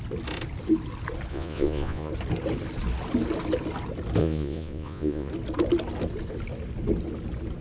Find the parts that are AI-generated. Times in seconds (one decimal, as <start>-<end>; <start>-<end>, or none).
1.3-2.1; 4.2-5.3